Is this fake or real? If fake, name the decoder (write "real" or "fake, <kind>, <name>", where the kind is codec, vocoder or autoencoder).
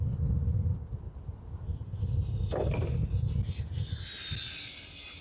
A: real